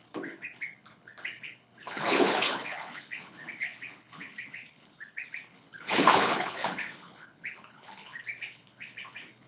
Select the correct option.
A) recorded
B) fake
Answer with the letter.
B